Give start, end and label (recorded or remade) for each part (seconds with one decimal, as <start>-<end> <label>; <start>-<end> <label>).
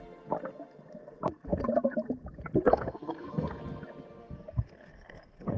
0.0-2.7 recorded; 2.7-3.5 remade; 3.5-4.2 recorded; 4.2-5.6 remade